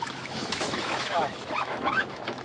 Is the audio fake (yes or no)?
yes